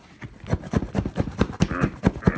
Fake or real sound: real